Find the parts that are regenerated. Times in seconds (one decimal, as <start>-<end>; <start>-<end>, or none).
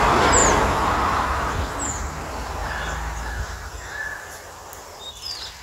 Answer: none